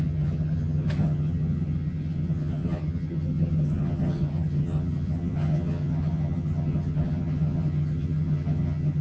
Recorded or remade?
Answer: remade